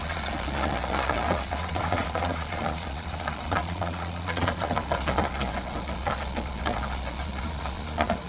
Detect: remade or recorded remade